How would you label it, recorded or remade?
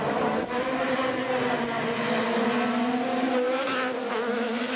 recorded